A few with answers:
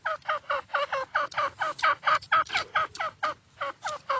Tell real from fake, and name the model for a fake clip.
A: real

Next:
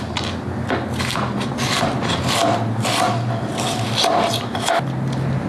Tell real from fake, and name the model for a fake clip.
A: real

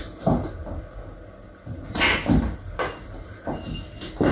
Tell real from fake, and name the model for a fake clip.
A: real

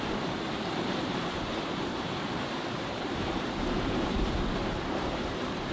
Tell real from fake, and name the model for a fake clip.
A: fake, vocoder, BigVGAN v2